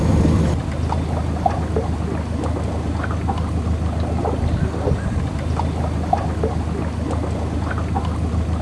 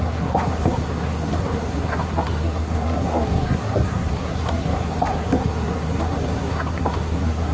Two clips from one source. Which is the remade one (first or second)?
second